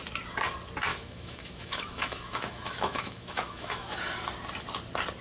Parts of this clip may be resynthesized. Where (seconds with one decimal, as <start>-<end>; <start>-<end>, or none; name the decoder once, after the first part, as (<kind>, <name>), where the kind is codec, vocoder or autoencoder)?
0.9-4.0 (autoencoder, DAC-VAE)